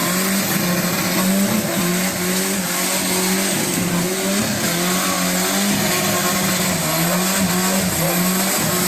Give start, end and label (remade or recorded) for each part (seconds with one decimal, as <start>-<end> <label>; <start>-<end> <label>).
0.0-8.9 recorded